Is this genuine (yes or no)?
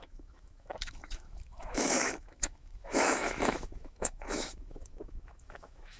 no